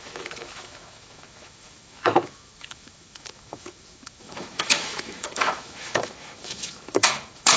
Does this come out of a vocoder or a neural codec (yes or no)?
yes